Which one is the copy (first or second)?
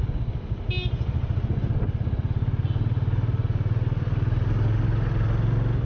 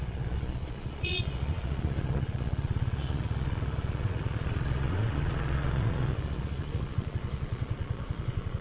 second